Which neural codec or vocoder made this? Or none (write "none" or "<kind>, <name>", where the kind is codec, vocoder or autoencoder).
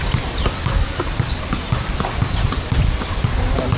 none